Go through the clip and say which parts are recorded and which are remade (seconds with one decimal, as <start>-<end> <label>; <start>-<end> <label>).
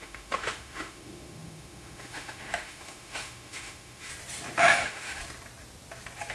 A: 0.0-4.1 remade; 4.1-4.6 recorded; 4.6-5.2 remade; 5.2-6.3 recorded